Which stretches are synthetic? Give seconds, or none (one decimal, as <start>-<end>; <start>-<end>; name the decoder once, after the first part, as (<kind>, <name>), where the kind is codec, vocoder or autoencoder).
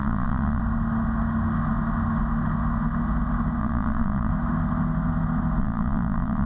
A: 0.0-0.6 (vocoder, Vocos); 3.6-4.3; 5.6-6.5